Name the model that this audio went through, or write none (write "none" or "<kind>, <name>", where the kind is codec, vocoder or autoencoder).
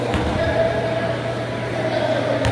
none